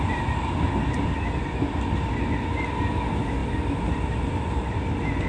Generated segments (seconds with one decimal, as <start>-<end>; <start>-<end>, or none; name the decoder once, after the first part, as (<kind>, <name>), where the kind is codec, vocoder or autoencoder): none